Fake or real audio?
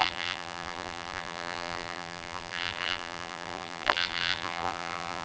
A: fake